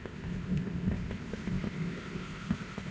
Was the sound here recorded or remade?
remade